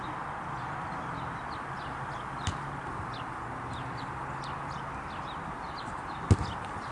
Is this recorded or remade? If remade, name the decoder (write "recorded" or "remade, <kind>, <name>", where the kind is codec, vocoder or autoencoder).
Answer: recorded